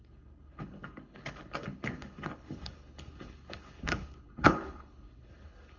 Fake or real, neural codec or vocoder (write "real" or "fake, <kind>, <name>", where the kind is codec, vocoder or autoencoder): fake, codec, HILCodec